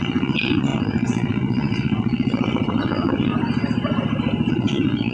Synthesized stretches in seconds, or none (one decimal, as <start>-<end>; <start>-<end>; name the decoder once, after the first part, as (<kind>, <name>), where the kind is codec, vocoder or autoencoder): 0.0-3.3 (vocoder, WaveNeXt); 4.5-5.1